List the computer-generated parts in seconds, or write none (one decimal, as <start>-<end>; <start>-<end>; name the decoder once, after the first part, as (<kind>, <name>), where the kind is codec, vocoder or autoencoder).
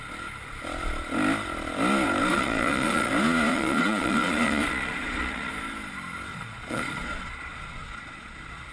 2.3-3.1 (vocoder, Vocos); 3.5-5.5; 6.3-8.7